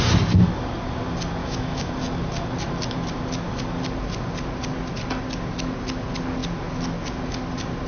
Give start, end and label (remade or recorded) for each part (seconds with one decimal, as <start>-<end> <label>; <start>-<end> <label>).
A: 0.0-1.4 recorded; 1.4-1.9 remade; 1.9-7.9 recorded